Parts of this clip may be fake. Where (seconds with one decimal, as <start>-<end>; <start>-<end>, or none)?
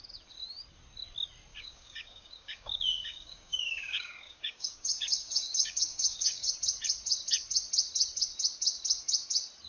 1.5-6.5